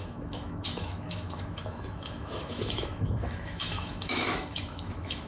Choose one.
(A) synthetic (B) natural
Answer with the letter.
A